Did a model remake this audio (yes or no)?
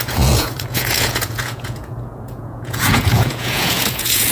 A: yes